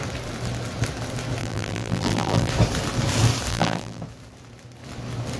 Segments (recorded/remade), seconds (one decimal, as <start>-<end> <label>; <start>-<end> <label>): 0.0-1.4 recorded; 1.4-2.5 remade; 2.5-3.5 recorded; 3.5-4.0 remade; 4.0-5.4 recorded